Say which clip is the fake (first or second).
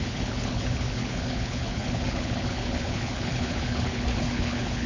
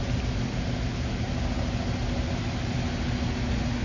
first